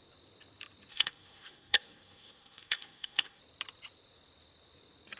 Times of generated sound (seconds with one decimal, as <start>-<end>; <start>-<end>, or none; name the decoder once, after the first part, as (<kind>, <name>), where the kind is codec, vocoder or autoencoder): 0.9-3.4 (codec, SNAC)